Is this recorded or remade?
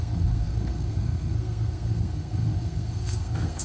remade